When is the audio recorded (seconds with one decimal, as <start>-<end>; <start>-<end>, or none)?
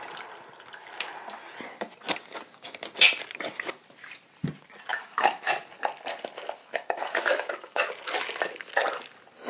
0.0-4.9; 5.5-6.6; 7.9-9.5